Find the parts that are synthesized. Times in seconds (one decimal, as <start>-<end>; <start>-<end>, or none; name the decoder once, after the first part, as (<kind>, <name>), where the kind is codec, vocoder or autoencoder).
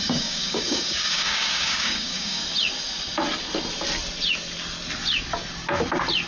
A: 0.0-2.4 (codec, DAC)